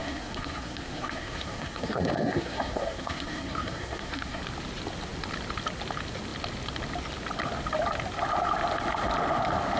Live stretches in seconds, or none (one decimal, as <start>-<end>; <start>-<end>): 4.4-9.8